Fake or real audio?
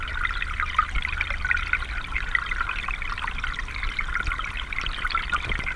real